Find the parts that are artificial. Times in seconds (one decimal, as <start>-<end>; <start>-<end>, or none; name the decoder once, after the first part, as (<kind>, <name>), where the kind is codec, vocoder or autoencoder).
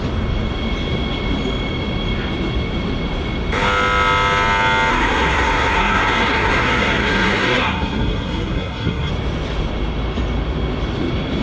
4.9-9.1 (codec, SNAC)